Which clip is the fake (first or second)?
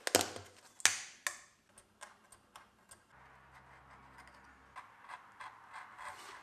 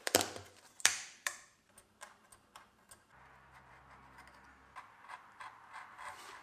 second